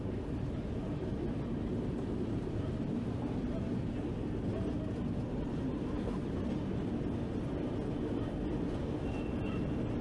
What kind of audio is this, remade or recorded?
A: recorded